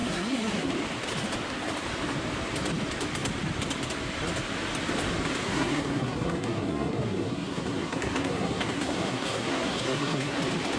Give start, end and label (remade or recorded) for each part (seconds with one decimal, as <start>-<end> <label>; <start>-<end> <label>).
0.0-0.7 remade; 0.7-5.4 recorded; 5.4-10.4 remade; 10.4-10.8 recorded